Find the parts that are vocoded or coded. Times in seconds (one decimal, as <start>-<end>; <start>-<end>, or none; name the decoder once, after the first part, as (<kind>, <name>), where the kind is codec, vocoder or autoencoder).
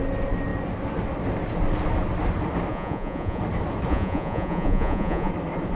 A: 2.7-3.4 (vocoder, Vocos); 3.9-5.3